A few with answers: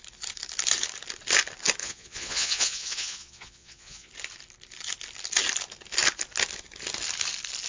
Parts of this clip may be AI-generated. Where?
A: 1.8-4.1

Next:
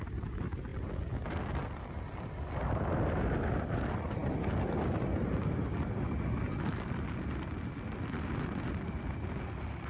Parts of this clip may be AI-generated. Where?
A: none

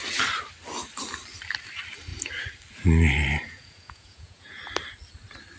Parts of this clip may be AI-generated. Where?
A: 3.4-4.6

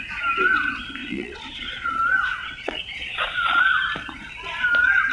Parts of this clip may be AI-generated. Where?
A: 1.0-1.9; 2.4-3.6

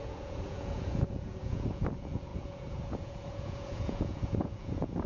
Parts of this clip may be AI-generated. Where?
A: 0.0-5.1

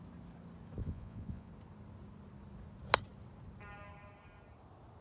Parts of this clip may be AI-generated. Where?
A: 0.8-1.5